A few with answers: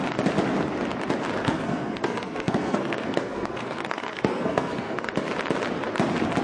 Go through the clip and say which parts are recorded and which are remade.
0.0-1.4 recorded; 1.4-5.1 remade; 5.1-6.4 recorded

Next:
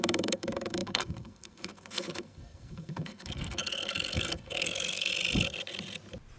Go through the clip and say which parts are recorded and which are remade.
0.0-5.1 remade; 5.1-6.4 recorded

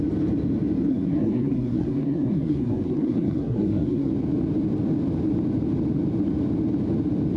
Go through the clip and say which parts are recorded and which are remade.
0.0-0.9 recorded; 0.9-4.1 remade; 4.1-7.4 recorded

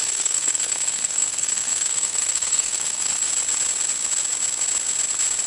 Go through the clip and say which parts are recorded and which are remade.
0.0-3.3 remade; 3.3-5.5 recorded

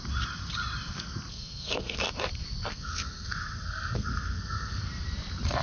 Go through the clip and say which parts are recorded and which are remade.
0.0-1.3 recorded; 1.3-2.1 remade; 2.1-2.7 recorded; 2.7-4.8 remade; 4.8-5.6 recorded

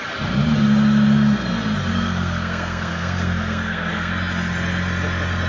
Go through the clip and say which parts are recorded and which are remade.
0.0-1.9 recorded; 1.9-4.1 remade; 4.1-5.5 recorded

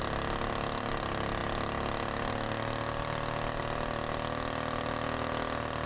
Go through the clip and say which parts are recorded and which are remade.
0.0-5.9 recorded

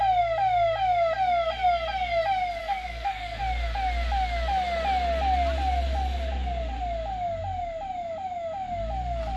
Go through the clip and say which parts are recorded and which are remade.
0.0-2.6 recorded; 2.6-3.4 remade; 3.4-9.4 recorded